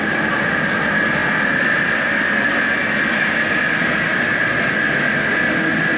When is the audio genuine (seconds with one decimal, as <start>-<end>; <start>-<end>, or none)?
0.0-6.0